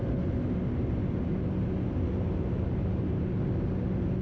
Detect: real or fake real